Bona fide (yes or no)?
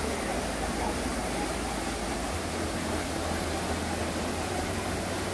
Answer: yes